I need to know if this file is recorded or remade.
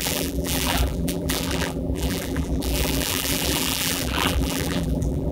remade